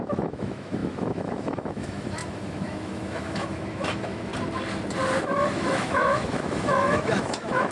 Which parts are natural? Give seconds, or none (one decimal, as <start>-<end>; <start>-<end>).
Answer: 4.3-5.2